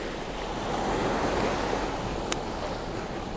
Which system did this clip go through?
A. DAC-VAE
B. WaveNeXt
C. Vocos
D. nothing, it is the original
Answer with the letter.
D